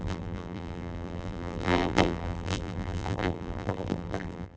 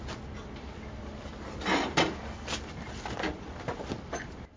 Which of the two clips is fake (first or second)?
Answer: first